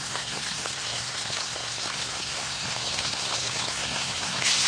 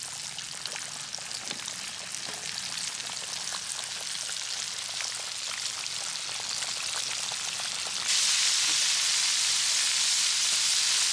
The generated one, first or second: first